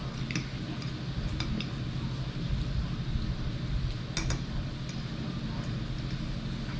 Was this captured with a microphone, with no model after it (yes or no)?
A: yes